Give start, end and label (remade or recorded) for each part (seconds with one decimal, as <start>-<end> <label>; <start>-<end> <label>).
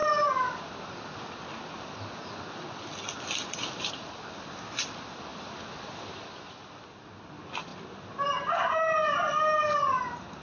0.0-10.4 recorded